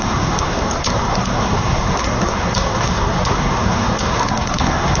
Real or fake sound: fake